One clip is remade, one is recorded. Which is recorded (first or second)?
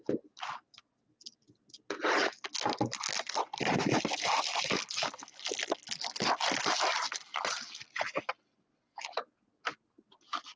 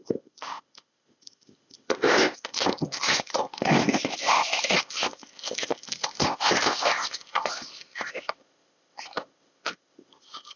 first